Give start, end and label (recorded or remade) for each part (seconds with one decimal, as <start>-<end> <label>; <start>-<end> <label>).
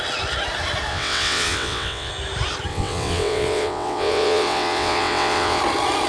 0.0-0.9 recorded; 0.9-2.1 remade; 2.1-2.7 recorded; 2.7-5.6 remade; 5.6-6.1 recorded